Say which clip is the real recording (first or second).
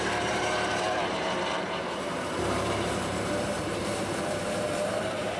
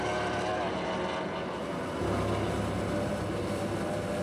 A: second